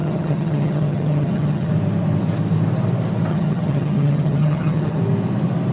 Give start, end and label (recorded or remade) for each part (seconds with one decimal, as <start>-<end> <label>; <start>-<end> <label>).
0.0-1.7 remade; 1.7-3.3 recorded; 3.3-5.0 remade; 5.0-5.7 recorded

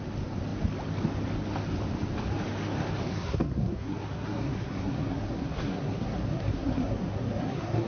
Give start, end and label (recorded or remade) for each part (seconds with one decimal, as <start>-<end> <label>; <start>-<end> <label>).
0.0-3.1 recorded; 3.1-7.9 remade